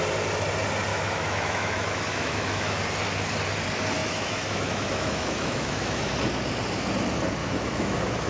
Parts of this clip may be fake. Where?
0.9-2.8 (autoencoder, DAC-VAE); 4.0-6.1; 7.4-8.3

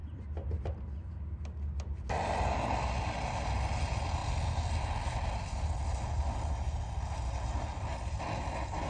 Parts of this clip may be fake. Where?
none

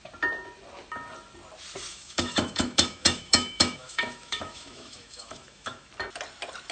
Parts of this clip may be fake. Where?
1.9-5.9 (autoencoder, DAC-VAE)